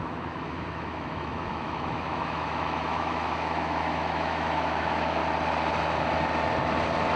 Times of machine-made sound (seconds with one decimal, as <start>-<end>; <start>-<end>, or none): 0.0-5.2